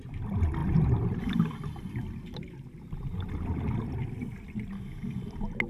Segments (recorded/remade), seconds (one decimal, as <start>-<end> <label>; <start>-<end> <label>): 0.0-0.6 recorded; 0.6-3.5 remade; 3.5-5.7 recorded

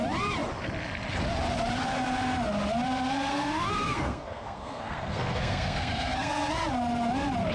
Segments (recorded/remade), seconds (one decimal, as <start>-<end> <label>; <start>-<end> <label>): 0.0-3.3 recorded; 3.3-6.3 remade; 6.3-7.5 recorded

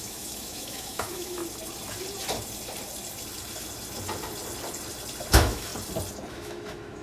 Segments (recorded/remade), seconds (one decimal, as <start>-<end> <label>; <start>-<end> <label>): 0.0-1.4 remade; 1.4-5.3 recorded; 5.3-5.7 remade; 5.7-6.3 recorded; 6.3-7.0 remade

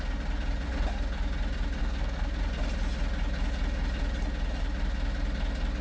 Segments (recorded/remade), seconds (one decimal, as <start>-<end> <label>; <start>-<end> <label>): 0.0-1.8 recorded; 1.8-2.4 remade; 2.4-5.8 recorded